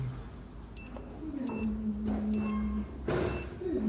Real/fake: real